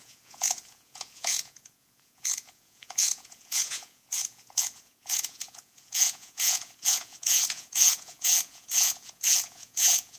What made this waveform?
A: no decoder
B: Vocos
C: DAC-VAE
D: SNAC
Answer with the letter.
B